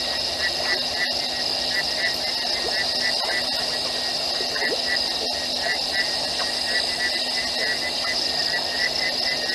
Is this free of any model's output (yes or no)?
yes